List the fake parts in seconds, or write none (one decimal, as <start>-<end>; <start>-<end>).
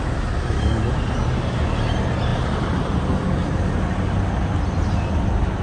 none